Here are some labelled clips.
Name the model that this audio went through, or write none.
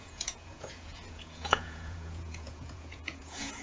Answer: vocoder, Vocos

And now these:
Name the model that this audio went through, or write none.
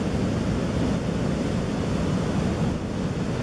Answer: none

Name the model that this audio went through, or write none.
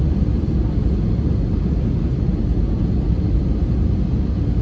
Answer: none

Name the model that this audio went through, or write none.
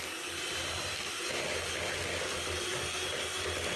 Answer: none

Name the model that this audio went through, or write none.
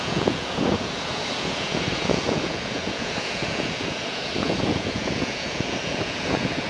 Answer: vocoder, Vocos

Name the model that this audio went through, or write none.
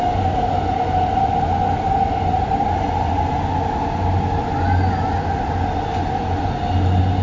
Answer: none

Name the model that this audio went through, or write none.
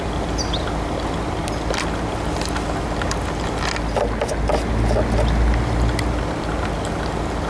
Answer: none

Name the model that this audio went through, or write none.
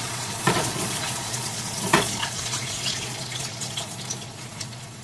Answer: vocoder, Vocos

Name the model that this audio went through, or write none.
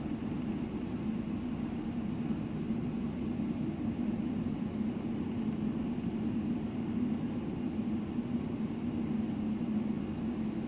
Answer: none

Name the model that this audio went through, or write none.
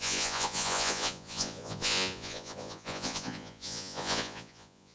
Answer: vocoder, Vocos